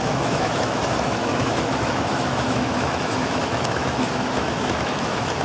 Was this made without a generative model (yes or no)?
no